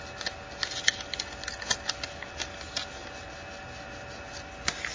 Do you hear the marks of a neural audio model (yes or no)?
no